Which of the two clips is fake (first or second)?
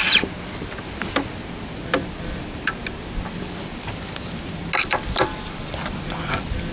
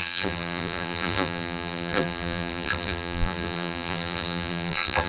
second